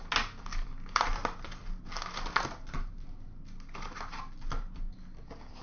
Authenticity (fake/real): real